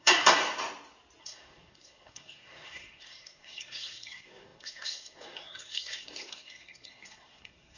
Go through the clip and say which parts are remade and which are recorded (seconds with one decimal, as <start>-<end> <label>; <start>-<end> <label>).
0.0-0.4 remade; 0.4-1.2 recorded; 1.2-7.8 remade